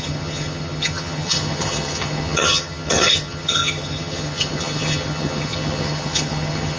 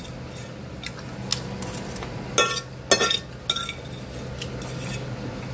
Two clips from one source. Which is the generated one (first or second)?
first